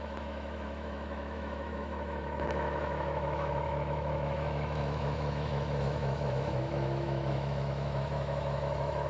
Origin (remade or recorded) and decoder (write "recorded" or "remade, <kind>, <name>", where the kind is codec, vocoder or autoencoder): remade, autoencoder, DAC-VAE